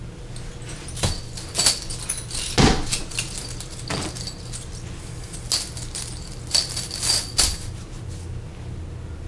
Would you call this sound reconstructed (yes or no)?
no